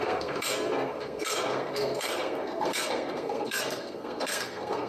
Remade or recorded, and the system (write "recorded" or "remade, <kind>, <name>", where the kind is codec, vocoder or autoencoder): remade, codec, SNAC